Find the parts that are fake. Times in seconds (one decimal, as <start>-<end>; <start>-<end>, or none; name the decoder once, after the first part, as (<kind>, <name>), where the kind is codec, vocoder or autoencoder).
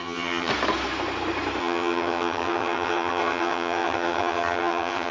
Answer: 0.0-0.5 (vocoder, HiFi-GAN); 1.6-5.1